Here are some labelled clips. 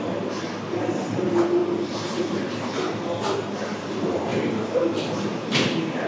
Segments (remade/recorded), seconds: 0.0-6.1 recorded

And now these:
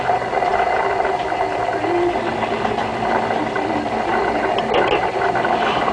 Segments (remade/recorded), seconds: 0.0-5.9 recorded

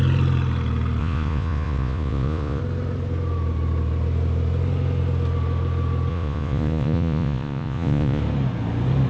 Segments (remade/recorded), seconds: 0.0-1.0 recorded; 1.0-2.6 remade; 2.6-6.1 recorded; 6.1-8.2 remade; 8.2-9.1 recorded

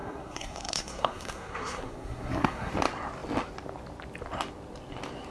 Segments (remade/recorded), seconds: 0.0-2.7 remade; 2.7-5.3 recorded